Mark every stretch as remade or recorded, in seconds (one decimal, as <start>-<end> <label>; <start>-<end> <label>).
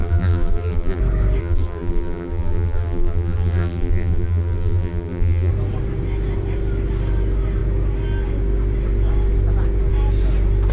0.0-1.0 remade; 1.0-1.4 recorded; 1.4-5.5 remade; 5.5-10.7 recorded